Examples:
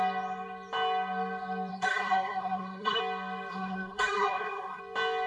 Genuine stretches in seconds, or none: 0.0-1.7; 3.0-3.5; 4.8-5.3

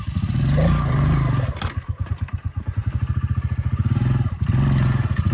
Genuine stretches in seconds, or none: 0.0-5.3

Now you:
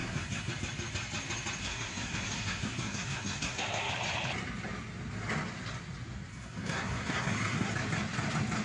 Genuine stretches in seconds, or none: 0.5-1.6; 3.9-6.3; 7.7-8.6